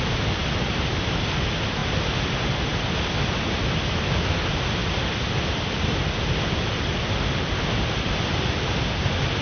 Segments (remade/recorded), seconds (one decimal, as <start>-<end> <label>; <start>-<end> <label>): 0.0-9.4 recorded